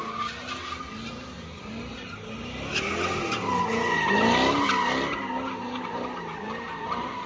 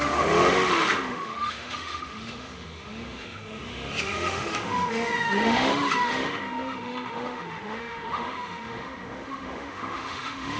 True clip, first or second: first